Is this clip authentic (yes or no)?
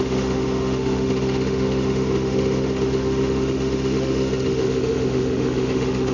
no